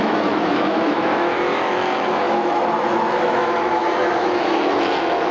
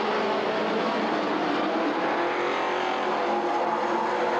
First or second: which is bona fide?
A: second